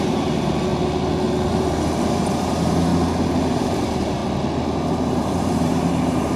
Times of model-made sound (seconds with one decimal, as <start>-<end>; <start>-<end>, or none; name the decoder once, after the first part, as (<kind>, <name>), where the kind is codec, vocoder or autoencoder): 0.0-0.7 (vocoder, BigVGAN v2); 1.5-2.9; 3.4-4.2; 5.1-6.4